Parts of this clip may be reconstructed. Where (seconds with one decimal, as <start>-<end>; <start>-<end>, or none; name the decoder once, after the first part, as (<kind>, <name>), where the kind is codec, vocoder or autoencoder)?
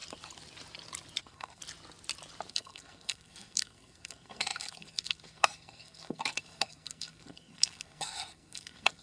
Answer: 1.2-1.6 (codec, SNAC); 2.5-9.0